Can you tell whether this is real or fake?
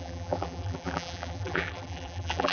fake